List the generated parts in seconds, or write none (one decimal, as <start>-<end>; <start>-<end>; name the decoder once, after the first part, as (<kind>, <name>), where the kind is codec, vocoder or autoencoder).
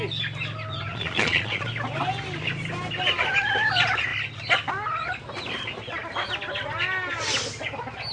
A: 0.9-1.7 (vocoder, Vocos)